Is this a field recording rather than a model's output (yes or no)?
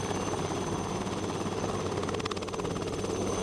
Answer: yes